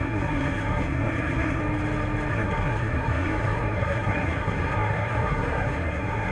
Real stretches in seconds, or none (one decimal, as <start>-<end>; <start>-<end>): 1.6-2.3